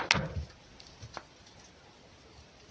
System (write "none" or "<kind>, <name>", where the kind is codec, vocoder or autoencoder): none